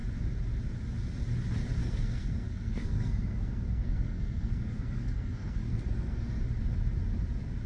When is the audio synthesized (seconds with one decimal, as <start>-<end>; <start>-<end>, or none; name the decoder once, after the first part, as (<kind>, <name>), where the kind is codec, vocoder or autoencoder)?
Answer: 1.8-6.4 (codec, SNAC)